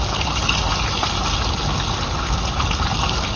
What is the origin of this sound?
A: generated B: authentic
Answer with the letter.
B